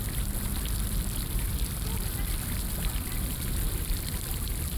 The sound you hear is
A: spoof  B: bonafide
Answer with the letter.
A